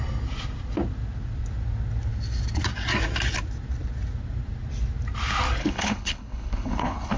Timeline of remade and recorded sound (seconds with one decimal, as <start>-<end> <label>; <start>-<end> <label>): 0.0-5.6 recorded; 5.6-7.2 remade